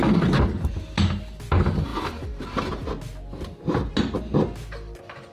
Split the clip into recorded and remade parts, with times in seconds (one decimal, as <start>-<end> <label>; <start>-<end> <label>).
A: 0.0-5.3 recorded